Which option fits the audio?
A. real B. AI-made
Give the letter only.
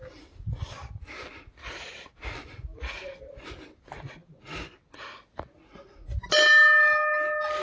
A